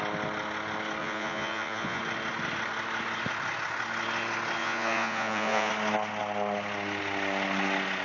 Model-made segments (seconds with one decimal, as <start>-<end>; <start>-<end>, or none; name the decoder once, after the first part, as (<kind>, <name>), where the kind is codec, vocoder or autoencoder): 1.0-2.0 (vocoder, Vocos); 4.6-5.7